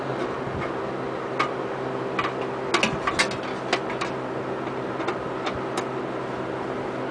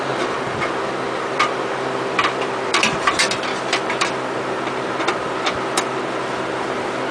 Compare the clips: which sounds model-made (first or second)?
second